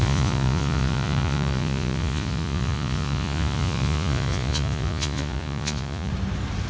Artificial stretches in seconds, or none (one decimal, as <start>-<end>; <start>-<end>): 0.0-6.1